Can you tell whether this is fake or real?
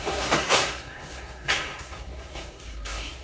fake